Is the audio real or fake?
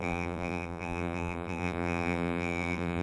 fake